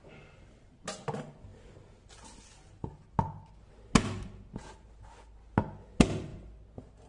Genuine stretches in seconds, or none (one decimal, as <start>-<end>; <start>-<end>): 0.0-7.1